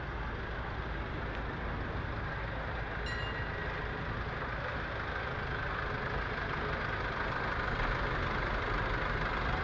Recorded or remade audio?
recorded